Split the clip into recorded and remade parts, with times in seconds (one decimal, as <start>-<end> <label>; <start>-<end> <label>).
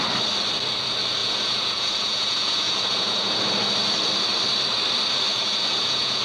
0.0-1.2 recorded; 1.2-3.4 remade; 3.4-5.3 recorded; 5.3-6.2 remade